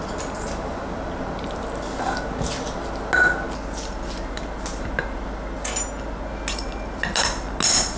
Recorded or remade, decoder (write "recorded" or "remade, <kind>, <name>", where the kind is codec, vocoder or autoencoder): recorded